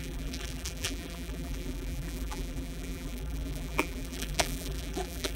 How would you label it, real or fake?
fake